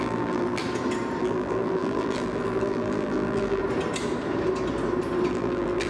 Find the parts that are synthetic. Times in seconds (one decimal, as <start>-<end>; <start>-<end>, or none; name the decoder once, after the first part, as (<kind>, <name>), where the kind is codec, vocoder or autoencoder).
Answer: 0.0-0.6 (vocoder, BigVGAN v2); 1.2-3.6; 5.3-5.9